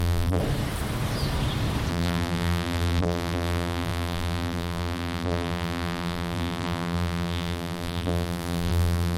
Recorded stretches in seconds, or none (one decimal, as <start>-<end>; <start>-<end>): 0.4-1.9